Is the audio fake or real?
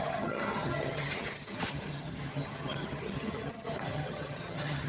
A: fake